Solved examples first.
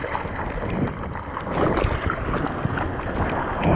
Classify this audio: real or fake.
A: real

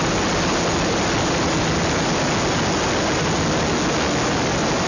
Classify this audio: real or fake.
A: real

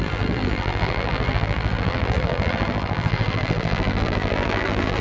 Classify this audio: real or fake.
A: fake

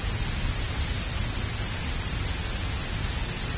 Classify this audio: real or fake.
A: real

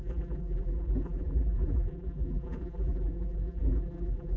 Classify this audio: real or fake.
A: fake